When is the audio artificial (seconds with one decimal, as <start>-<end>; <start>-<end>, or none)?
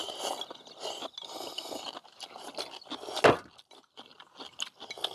none